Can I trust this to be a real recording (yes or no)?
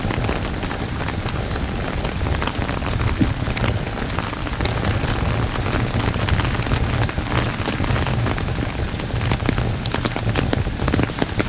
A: yes